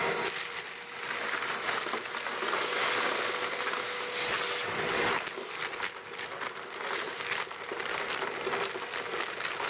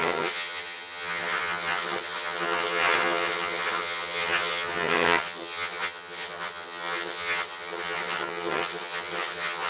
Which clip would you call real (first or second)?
first